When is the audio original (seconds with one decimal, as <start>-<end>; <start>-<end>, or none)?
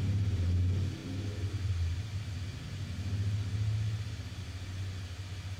0.0-5.6